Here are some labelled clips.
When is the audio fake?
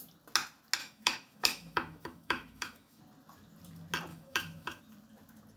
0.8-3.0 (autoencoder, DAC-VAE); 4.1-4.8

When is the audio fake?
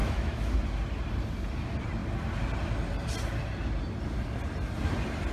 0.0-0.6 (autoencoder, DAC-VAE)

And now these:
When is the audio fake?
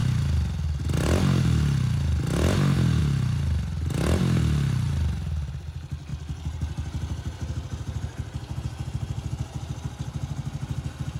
none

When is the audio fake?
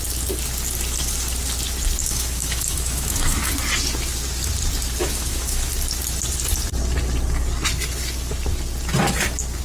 2.0-3.5 (autoencoder, DAC-VAE); 5.0-5.7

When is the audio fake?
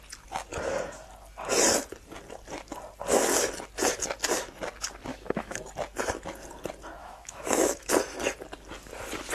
5.1-5.6 (autoencoder, DAC-VAE); 7.0-7.9